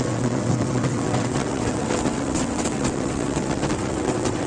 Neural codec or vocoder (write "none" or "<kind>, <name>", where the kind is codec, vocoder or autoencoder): vocoder, WaveNeXt